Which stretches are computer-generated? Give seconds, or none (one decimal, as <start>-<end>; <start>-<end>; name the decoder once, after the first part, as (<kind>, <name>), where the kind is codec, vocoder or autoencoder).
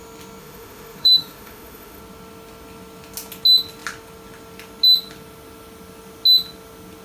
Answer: 0.4-2.0 (autoencoder, DAC-VAE)